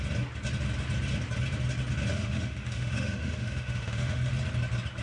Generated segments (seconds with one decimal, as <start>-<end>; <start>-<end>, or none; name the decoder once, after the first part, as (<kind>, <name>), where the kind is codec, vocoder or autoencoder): 2.1-4.3 (autoencoder, DAC-VAE)